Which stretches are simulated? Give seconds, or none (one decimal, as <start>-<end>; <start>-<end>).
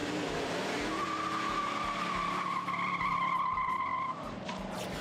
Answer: 2.1-5.0